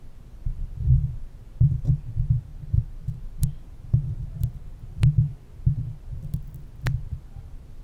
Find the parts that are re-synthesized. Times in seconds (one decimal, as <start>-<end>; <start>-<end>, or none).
2.5-3.6